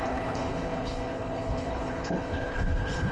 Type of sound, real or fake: fake